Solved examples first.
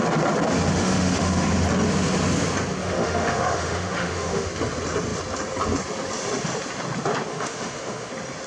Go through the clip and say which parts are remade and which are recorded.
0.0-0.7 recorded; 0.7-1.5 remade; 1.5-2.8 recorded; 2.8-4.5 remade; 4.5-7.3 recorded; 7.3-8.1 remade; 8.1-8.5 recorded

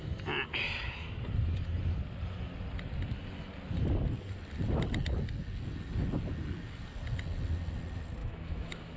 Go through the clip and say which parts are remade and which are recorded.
0.0-8.2 recorded; 8.2-9.0 remade